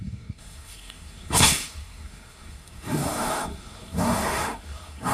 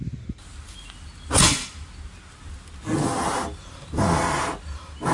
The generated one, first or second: first